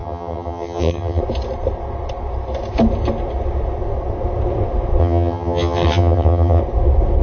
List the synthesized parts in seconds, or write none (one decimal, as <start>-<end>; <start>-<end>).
0.0-1.2; 5.0-6.6